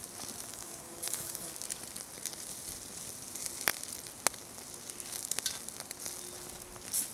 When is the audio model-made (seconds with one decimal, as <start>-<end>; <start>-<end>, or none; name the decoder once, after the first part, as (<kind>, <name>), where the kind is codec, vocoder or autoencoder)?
0.5-1.5 (codec, DAC)